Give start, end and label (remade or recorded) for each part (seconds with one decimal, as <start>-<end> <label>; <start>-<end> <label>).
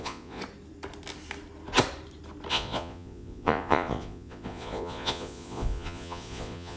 0.0-0.4 remade; 0.4-2.5 recorded; 2.5-6.8 remade